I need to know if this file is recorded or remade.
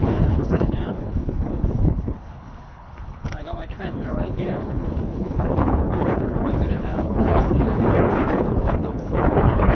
remade